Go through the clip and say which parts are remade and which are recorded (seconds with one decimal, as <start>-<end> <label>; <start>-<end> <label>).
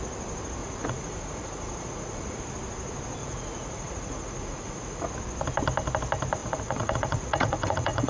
0.0-0.6 recorded; 0.6-2.4 remade; 2.4-3.2 recorded; 3.2-5.1 remade; 5.1-6.4 recorded; 6.4-8.1 remade